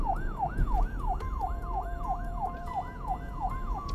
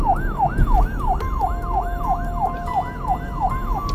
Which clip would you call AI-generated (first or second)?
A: first